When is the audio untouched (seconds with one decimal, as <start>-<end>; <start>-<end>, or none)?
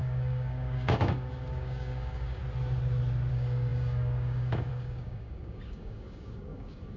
2.4-3.3